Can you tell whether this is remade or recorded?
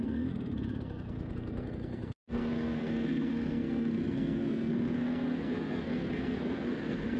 remade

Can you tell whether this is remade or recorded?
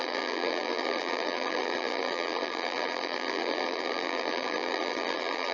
remade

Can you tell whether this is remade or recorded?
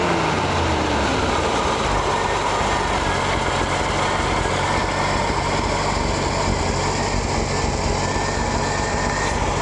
recorded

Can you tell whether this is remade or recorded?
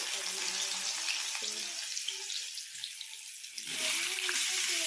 recorded